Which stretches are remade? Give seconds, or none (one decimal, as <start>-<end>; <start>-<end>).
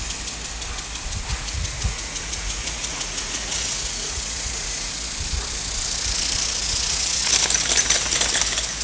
1.3-4.9; 6.6-7.2